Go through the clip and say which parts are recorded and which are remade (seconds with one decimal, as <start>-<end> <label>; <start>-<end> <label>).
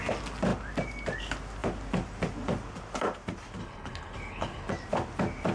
0.0-3.6 recorded; 3.6-4.7 remade; 4.7-5.5 recorded